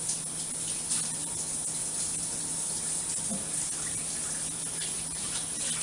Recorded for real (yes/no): yes